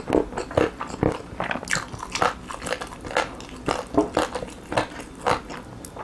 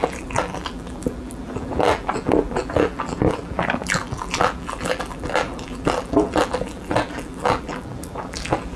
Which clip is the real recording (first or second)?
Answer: first